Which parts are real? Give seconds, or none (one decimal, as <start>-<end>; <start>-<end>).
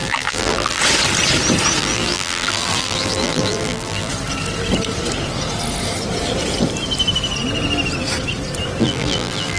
0.8-1.8; 4.1-8.8